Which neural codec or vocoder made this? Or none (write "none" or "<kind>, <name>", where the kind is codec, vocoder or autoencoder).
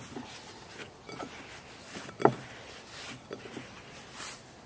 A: vocoder, BigVGAN v2